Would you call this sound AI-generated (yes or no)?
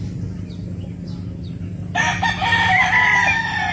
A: no